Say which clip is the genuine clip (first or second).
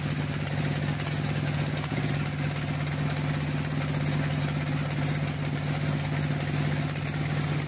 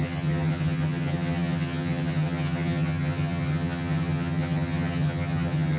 first